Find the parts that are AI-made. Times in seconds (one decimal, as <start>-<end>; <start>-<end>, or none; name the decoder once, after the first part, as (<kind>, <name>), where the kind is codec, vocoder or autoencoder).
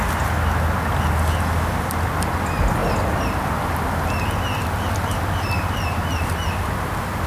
none